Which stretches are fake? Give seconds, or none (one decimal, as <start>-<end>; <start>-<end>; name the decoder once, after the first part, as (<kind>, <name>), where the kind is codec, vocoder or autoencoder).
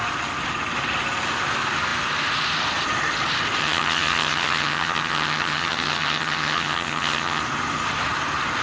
3.6-7.4 (vocoder, HiFi-GAN)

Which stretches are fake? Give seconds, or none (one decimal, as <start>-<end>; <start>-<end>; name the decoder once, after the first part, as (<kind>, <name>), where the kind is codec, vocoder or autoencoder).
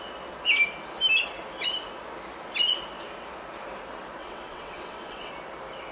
4.2-5.3 (vocoder, WaveNeXt)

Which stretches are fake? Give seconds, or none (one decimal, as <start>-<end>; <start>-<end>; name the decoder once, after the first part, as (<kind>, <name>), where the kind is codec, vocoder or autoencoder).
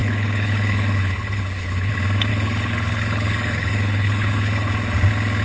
0.0-1.9 (codec, HILCodec); 2.3-4.7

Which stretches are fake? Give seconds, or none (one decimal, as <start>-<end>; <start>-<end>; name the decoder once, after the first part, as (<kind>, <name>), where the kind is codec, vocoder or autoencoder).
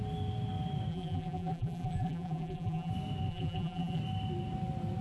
0.9-2.9 (vocoder, BigVGAN v2); 3.3-4.0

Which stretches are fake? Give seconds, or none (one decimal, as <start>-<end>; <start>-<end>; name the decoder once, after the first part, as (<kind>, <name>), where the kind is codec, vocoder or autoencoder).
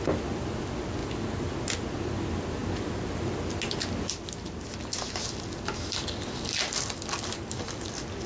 none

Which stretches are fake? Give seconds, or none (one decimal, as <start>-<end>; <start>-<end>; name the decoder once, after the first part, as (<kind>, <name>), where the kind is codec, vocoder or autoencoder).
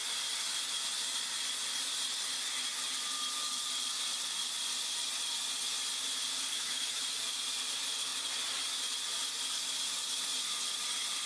6.5-7.0 (autoencoder, DAC-VAE)